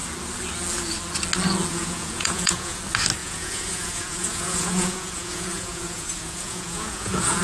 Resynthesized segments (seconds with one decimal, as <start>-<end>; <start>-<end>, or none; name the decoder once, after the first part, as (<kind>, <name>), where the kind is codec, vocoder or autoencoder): 1.7-2.8 (vocoder, Vocos); 3.2-7.4